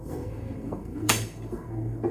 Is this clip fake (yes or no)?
yes